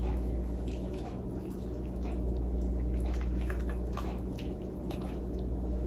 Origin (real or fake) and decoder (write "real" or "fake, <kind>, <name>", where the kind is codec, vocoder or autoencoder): fake, autoencoder, DAC-VAE